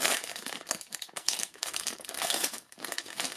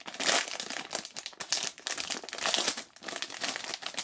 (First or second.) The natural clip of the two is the second